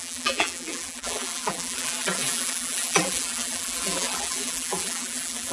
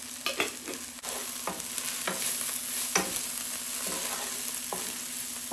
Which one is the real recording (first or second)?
second